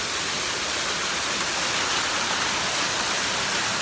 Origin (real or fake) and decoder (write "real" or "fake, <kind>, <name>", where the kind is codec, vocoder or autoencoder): real